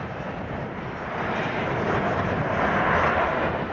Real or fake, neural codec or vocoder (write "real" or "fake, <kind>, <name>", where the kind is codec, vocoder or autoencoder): real